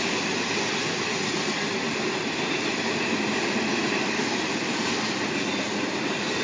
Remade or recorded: recorded